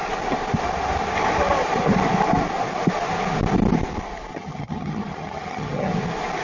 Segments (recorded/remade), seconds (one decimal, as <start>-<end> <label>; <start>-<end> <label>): 0.0-4.3 recorded; 4.3-5.9 remade; 5.9-6.4 recorded